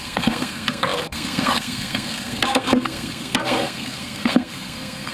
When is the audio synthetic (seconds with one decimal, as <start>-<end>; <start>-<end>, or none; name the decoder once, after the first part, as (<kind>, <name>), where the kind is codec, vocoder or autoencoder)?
0.0-5.1 (codec, SNAC)